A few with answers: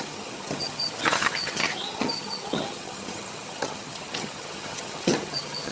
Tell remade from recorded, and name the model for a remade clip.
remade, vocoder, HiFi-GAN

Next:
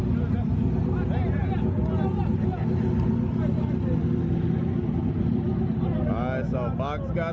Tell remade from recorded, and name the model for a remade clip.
recorded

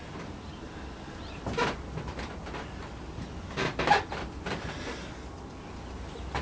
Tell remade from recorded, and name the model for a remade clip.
recorded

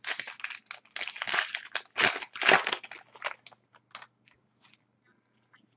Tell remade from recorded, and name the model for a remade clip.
recorded